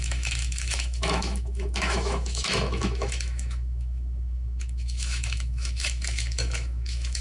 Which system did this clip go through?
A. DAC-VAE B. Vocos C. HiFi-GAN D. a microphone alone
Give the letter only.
A